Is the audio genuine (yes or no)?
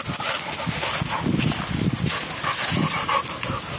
yes